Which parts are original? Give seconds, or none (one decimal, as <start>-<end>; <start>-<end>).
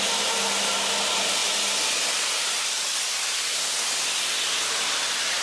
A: 0.0-5.4